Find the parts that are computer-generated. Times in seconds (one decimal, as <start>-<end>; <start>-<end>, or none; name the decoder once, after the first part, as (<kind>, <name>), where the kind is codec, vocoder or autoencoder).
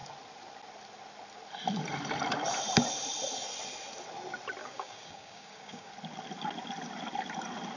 4.6-5.9 (codec, DAC)